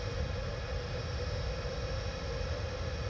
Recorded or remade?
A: recorded